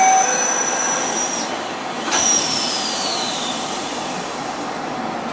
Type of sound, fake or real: real